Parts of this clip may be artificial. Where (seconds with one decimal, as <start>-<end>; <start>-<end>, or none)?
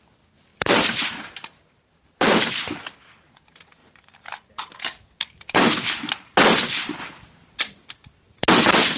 0.5-2.5; 7.0-7.6